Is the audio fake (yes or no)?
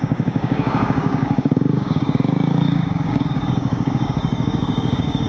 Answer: yes